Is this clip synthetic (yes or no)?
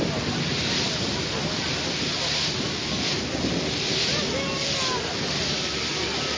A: no